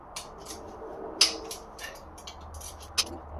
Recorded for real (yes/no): yes